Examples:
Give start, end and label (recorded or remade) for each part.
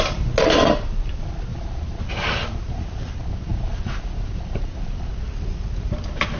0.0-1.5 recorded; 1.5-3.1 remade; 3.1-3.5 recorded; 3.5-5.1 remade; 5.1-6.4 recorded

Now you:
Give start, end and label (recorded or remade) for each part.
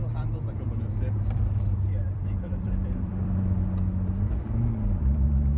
0.0-3.4 remade; 3.4-5.6 recorded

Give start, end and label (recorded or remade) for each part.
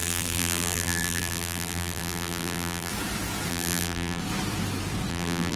0.0-2.9 remade; 2.9-3.5 recorded; 3.5-4.2 remade; 4.2-5.1 recorded; 5.1-5.6 remade